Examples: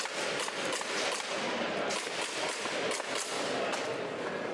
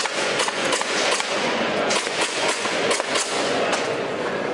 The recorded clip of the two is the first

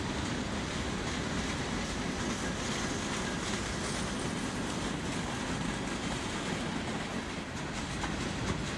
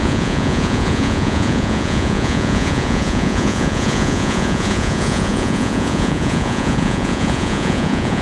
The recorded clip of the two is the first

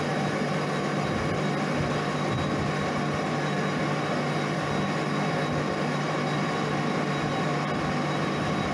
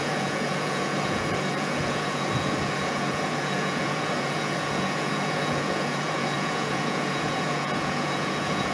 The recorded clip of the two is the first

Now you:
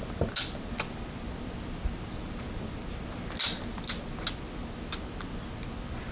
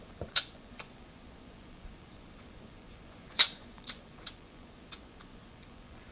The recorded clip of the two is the first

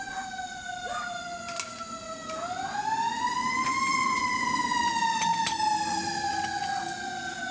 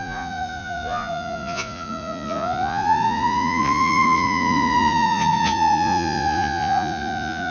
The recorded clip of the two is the first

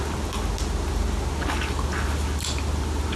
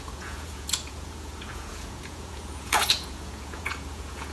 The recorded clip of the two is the first